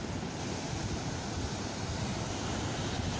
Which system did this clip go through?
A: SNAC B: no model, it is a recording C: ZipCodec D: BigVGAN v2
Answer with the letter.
B